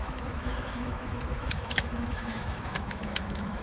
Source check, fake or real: fake